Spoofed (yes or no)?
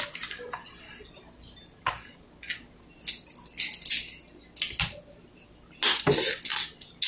no